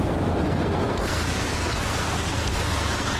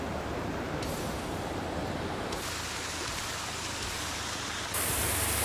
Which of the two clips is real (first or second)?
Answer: second